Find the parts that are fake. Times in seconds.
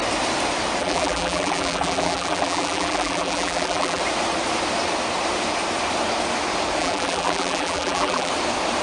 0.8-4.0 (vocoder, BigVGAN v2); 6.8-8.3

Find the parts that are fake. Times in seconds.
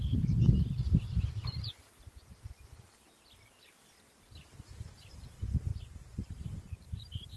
0.0-2.1 (vocoder, BigVGAN v2); 5.7-7.4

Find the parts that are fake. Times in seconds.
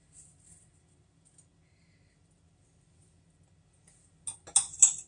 none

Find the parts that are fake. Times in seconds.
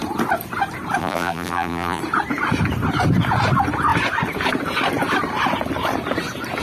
1.0-2.0 (vocoder, BigVGAN v2)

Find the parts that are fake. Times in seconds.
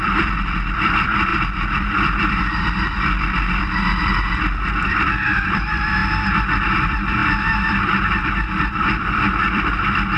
0.0-6.0 (vocoder, BigVGAN v2); 6.8-10.2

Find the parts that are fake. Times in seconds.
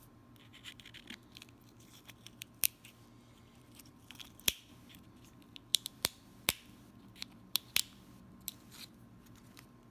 0.0-0.5 (vocoder, BigVGAN v2); 3.4-9.9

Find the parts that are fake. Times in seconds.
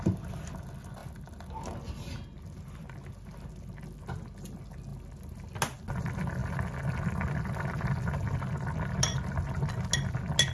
none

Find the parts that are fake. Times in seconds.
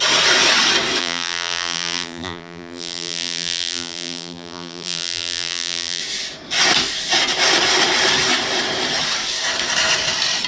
1.0-6.0 (vocoder, BigVGAN v2)